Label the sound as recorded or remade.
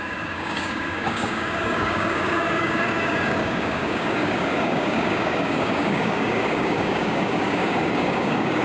remade